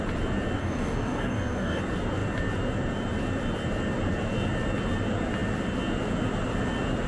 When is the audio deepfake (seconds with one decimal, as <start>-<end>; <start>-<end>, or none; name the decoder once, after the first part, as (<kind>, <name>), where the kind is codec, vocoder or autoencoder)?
0.6-1.8 (codec, DAC)